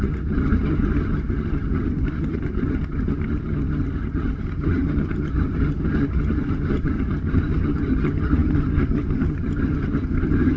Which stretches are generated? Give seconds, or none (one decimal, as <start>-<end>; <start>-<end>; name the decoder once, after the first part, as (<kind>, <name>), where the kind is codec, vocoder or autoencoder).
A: 0.0-10.6 (vocoder, HiFi-GAN)